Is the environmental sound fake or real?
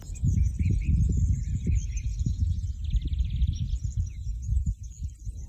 real